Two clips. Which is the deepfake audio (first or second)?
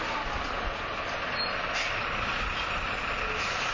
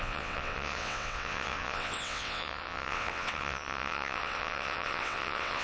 second